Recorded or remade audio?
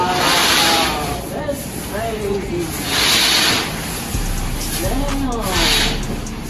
recorded